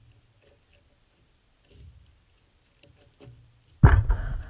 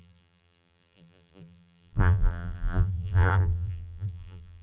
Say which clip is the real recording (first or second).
first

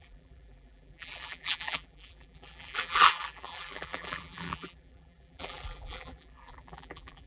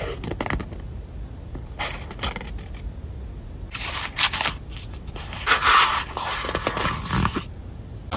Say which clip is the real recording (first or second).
second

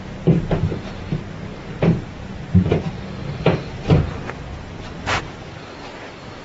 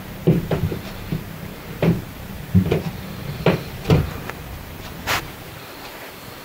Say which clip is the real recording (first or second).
first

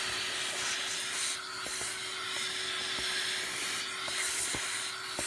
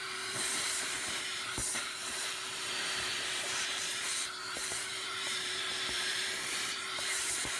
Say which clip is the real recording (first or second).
first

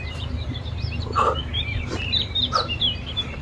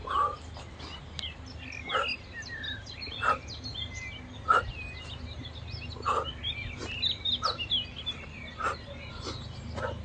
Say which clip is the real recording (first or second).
second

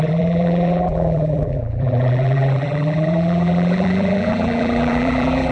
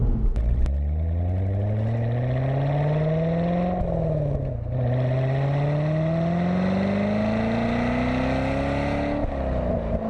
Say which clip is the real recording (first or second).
second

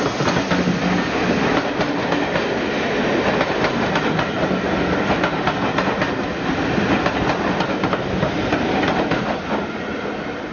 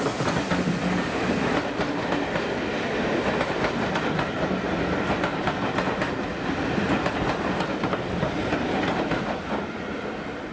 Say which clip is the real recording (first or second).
first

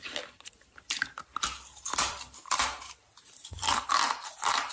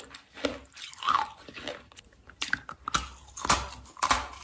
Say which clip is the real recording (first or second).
second